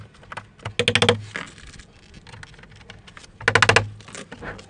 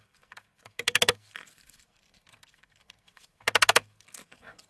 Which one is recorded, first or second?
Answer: first